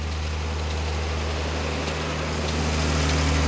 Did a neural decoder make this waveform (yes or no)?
no